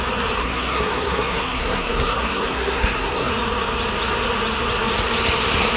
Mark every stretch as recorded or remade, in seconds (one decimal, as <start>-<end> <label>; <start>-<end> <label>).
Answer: 0.0-0.4 recorded; 0.4-3.3 remade; 3.3-5.8 recorded